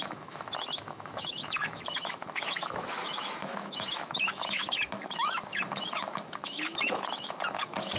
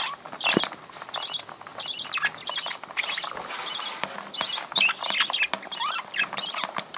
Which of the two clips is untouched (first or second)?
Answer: second